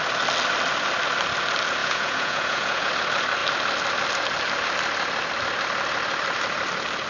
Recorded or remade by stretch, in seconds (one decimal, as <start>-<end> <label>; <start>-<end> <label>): 0.0-1.8 recorded; 1.8-2.9 remade; 2.9-7.1 recorded

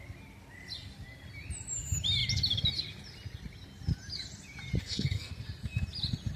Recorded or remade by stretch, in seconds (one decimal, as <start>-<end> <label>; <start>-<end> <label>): 0.0-4.8 recorded; 4.8-5.3 remade; 5.3-6.4 recorded

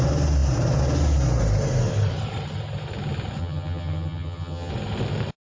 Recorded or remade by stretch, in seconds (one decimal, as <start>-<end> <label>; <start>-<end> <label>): 0.0-3.4 recorded; 3.4-4.7 remade; 4.7-5.6 recorded

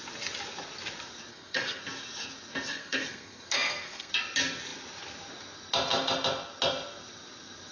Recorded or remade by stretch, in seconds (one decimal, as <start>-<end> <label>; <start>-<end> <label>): 0.0-1.3 recorded; 1.3-1.8 remade; 1.8-2.7 recorded; 2.7-4.1 remade; 4.1-7.7 recorded

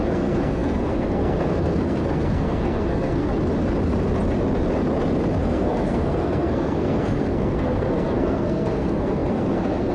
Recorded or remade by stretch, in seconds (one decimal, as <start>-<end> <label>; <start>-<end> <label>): 0.0-3.3 remade; 3.3-5.4 recorded; 5.4-9.9 remade

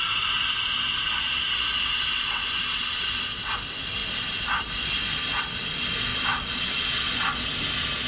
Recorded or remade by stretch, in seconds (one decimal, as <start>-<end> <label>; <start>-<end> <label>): 0.0-6.1 recorded; 6.1-7.4 remade; 7.4-8.1 recorded

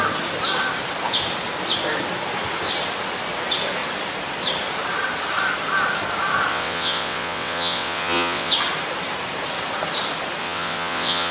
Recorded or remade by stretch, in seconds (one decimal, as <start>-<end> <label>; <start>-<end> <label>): 0.0-6.5 recorded; 6.5-8.5 remade; 8.5-10.4 recorded; 10.4-11.3 remade